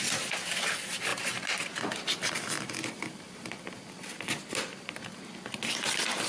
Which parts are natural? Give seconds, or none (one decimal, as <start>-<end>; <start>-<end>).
0.0-6.3